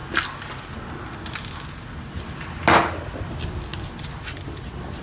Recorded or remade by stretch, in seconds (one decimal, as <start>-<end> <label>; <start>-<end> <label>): 0.0-5.0 recorded